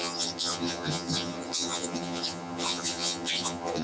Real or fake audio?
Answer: fake